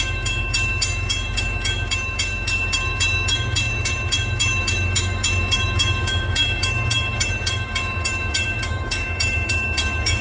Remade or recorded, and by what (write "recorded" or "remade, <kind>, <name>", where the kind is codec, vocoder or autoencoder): remade, autoencoder, DAC-VAE